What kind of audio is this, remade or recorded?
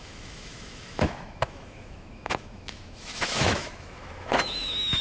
remade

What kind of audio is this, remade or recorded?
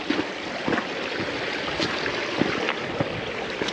recorded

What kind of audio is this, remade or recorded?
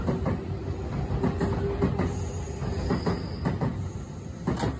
recorded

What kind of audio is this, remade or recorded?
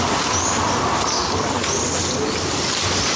recorded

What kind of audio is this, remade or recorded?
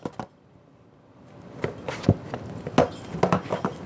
recorded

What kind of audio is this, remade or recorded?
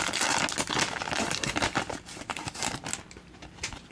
recorded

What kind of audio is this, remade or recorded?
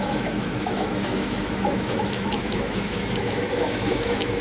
remade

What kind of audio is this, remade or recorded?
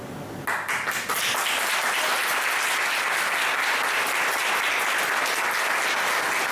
recorded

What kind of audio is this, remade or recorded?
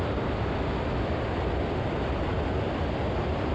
recorded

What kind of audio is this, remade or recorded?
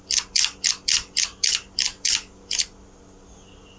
recorded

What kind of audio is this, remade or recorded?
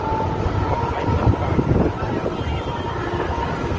recorded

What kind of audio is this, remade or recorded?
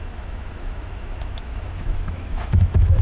remade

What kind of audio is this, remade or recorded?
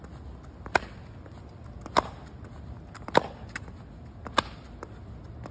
recorded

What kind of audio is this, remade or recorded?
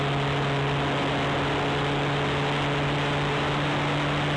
recorded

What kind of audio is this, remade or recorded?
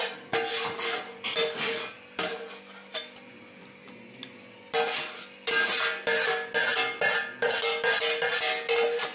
recorded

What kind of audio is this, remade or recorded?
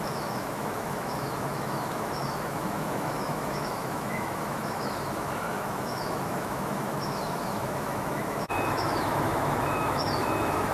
remade